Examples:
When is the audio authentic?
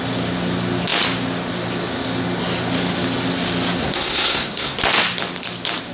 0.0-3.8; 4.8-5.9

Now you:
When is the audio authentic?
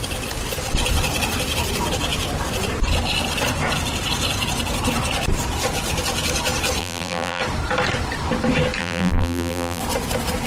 0.0-6.8; 7.4-8.8; 9.8-10.5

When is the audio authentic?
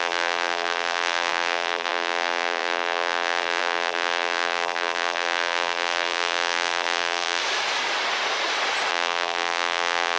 7.4-8.9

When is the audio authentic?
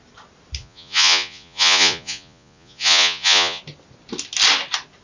0.0-0.6; 3.6-5.0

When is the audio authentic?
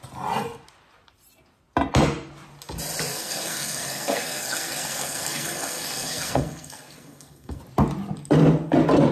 0.0-3.1; 7.6-9.1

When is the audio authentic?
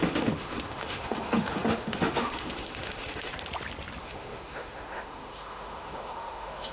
3.3-4.0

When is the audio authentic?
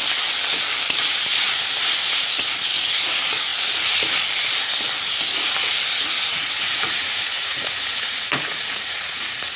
0.0-6.3